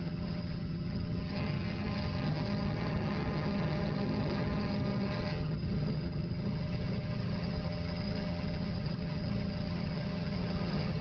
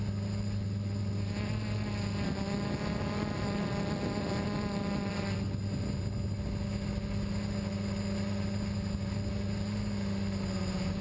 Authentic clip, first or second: second